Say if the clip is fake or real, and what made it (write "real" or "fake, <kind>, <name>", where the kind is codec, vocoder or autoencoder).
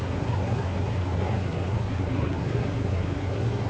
fake, codec, SNAC